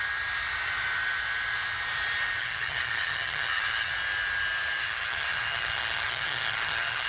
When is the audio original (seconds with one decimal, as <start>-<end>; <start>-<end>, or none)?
0.0-2.4; 3.9-4.8